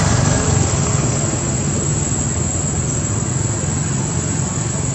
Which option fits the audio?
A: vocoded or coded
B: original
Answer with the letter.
B